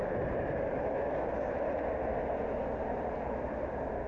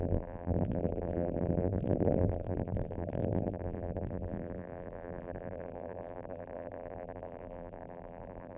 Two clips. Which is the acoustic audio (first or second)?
first